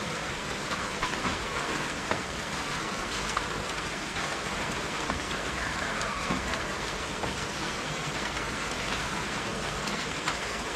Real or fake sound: fake